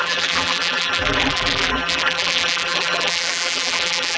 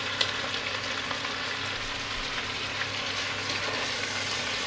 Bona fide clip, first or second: second